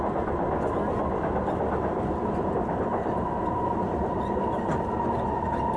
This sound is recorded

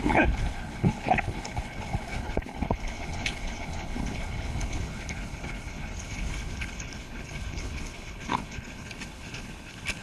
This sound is remade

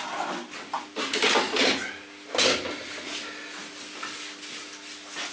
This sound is recorded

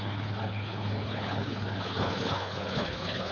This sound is remade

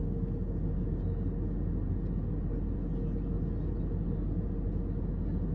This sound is recorded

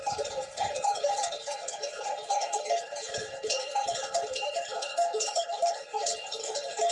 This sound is remade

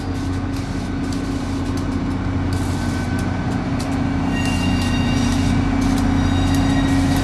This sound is recorded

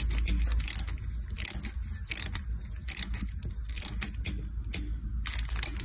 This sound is recorded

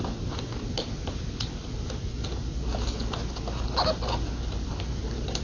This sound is recorded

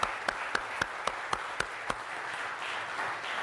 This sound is recorded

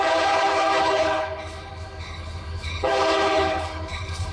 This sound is remade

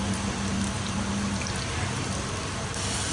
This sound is recorded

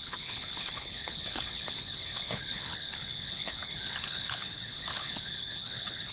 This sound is remade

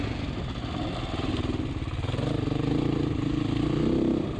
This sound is recorded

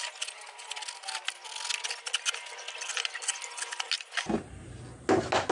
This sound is recorded